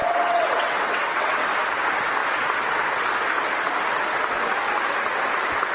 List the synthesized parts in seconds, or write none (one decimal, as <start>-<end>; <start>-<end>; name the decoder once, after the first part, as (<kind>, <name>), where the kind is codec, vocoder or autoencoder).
0.0-1.5 (vocoder, WaveNeXt)